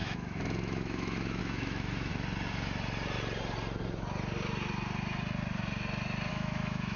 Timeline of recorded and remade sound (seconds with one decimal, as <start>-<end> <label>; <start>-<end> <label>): 0.0-2.1 remade; 2.1-6.3 recorded; 6.3-7.0 remade